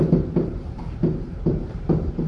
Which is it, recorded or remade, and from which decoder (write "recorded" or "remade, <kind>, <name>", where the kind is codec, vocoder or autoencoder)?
remade, vocoder, BigVGAN v2